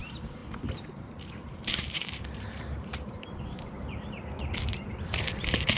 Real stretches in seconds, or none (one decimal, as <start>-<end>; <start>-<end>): 0.4-0.9